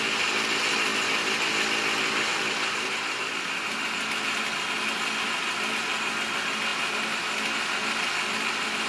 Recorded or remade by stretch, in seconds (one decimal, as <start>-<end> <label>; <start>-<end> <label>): 0.0-8.9 recorded